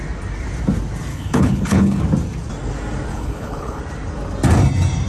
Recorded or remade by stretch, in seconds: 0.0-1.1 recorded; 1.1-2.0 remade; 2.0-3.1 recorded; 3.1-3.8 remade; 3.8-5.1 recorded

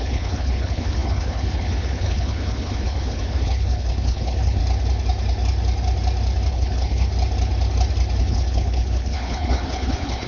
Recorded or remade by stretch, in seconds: 0.0-4.6 remade; 4.6-6.5 recorded; 6.5-7.1 remade; 7.1-8.2 recorded; 8.2-10.3 remade

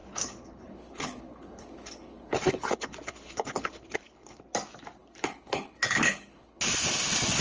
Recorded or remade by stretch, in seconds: 0.0-4.4 remade; 4.4-5.0 recorded; 5.0-6.6 remade; 6.6-7.4 recorded